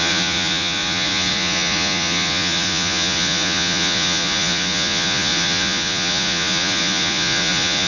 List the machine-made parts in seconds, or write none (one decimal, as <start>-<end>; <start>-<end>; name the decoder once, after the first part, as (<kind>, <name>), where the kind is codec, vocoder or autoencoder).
0.0-7.9 (vocoder, Vocos)

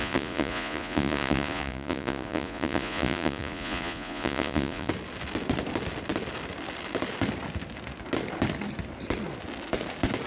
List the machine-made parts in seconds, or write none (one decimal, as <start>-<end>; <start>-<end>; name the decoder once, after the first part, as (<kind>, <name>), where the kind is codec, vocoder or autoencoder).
0.0-4.9 (vocoder, Vocos)